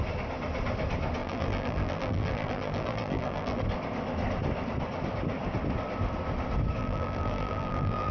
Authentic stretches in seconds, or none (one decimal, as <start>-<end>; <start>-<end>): 0.0-1.2; 3.6-6.8